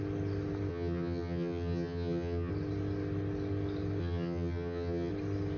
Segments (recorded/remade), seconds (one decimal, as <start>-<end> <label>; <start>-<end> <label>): 0.0-0.7 recorded; 0.7-2.5 remade; 2.5-4.0 recorded; 4.0-5.1 remade; 5.1-5.6 recorded